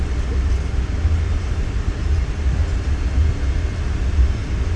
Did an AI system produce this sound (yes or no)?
no